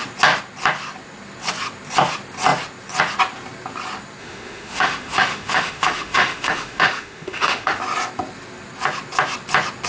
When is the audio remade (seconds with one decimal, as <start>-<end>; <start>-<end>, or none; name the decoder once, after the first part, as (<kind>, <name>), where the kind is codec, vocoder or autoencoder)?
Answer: 4.2-7.8 (autoencoder, DAC-VAE)